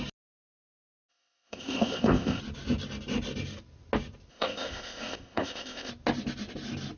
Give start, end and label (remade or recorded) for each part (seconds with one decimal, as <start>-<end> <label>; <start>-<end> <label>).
0.0-1.1 recorded; 1.1-2.4 remade; 2.4-4.3 recorded; 4.3-5.9 remade; 5.9-7.0 recorded